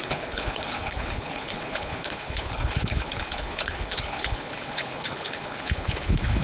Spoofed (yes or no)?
yes